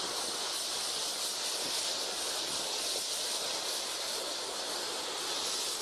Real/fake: real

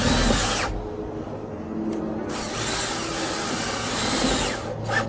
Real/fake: real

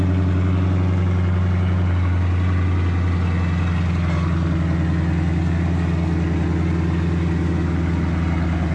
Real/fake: real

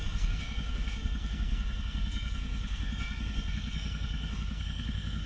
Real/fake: fake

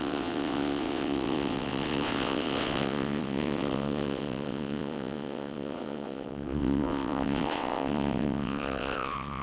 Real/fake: fake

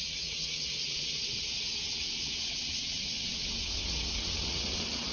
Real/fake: fake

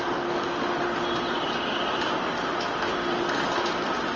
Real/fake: real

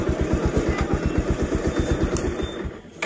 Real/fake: real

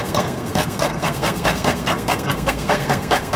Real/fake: fake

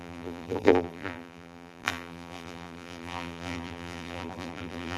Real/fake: fake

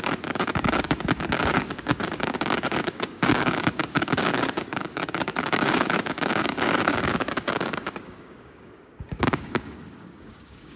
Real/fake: fake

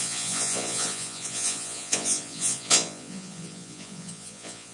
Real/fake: fake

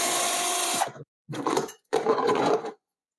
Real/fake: fake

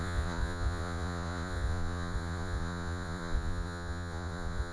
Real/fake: fake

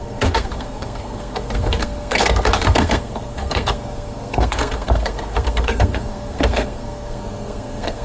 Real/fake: fake